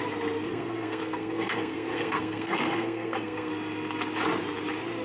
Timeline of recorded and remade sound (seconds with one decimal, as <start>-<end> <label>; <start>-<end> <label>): 0.0-0.5 recorded; 0.5-3.5 remade; 3.5-5.0 recorded